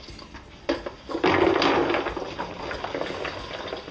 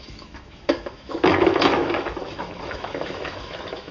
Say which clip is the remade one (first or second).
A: second